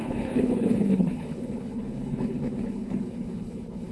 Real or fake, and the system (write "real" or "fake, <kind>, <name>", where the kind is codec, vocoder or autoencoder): fake, codec, HILCodec